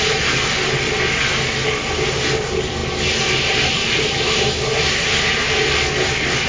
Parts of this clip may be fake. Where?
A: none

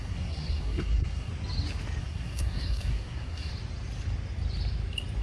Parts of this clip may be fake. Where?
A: 0.0-1.3 (codec, SNAC); 2.0-3.5

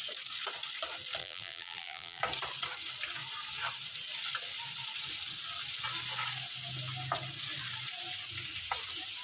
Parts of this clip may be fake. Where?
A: 1.2-2.2 (vocoder, BigVGAN v2)

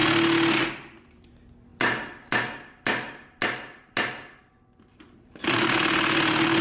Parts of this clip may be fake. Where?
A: none

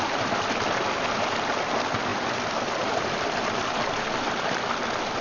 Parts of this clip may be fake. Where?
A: none

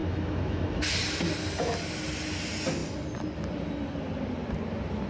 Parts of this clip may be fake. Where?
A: 0.0-0.8 (autoencoder, DAC-VAE)

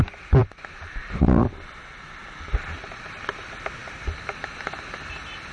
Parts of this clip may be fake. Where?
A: none

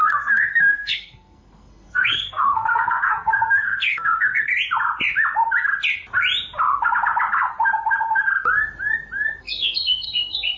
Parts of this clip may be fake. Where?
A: 0.0-4.5 (codec, SNAC); 9.4-10.6